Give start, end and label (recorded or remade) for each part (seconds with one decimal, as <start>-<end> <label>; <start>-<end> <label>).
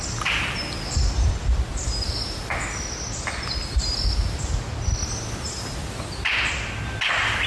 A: 0.0-7.5 recorded